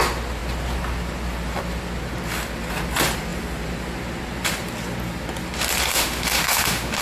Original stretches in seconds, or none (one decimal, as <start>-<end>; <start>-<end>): 0.0-5.9